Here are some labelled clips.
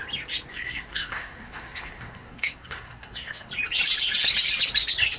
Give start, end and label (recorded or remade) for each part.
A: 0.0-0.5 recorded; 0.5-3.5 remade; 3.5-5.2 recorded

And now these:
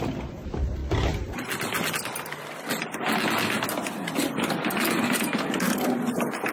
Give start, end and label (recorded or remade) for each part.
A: 0.0-6.5 recorded

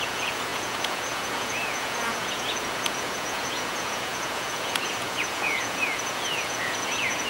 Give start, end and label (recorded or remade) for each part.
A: 0.0-7.3 remade